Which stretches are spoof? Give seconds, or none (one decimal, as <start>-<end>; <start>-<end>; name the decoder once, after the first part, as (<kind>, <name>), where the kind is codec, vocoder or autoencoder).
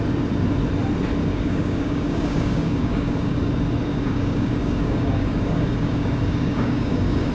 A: 1.2-3.5 (codec, DAC); 3.9-7.3